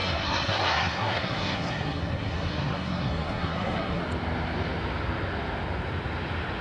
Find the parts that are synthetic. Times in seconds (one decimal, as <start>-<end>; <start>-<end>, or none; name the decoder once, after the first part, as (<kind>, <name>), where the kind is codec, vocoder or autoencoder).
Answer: 0.0-4.0 (codec, SNAC)